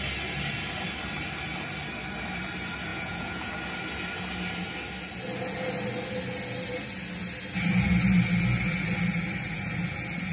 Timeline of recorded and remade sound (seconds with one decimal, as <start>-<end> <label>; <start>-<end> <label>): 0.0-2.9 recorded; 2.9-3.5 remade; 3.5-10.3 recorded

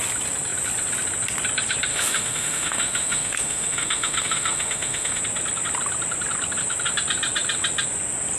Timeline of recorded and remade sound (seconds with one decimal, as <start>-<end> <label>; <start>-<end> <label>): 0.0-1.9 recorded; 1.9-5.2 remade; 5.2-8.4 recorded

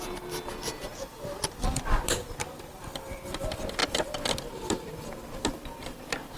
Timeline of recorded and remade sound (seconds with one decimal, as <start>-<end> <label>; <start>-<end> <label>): 0.0-0.9 recorded; 0.9-1.8 remade; 1.8-2.2 recorded; 2.2-3.2 remade; 3.2-6.4 recorded